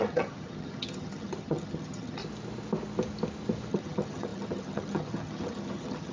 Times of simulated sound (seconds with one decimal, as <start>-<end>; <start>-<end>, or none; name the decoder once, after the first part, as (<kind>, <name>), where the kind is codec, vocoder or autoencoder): 0.0-2.2 (vocoder, HiFi-GAN); 3.7-6.1